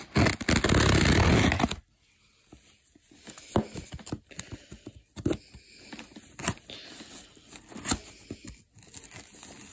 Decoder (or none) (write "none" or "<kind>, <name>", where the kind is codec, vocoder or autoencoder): none